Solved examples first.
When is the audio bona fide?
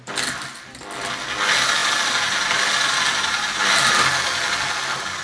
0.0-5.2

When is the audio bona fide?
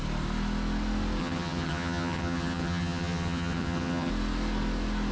0.0-1.2; 4.1-5.1